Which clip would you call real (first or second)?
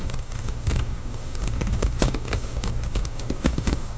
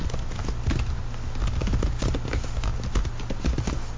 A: second